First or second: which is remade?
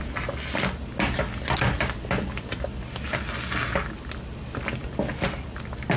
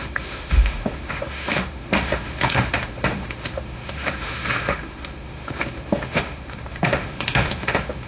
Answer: second